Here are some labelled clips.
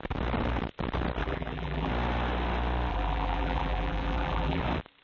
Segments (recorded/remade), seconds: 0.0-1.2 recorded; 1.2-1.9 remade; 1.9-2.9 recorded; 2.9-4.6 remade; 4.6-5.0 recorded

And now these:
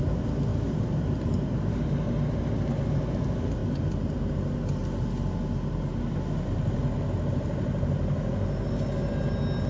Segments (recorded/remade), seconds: 0.0-0.5 recorded; 0.5-1.9 remade; 1.9-9.7 recorded

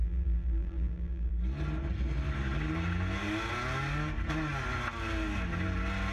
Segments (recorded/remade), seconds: 0.0-1.3 remade; 1.3-6.1 recorded

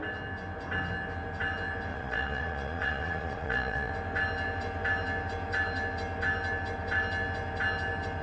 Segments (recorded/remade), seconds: 0.0-1.9 recorded; 1.9-3.9 remade; 3.9-8.2 recorded

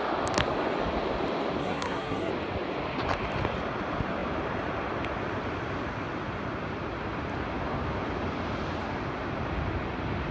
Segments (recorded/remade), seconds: 0.0-1.6 recorded; 1.6-2.3 remade; 2.3-10.3 recorded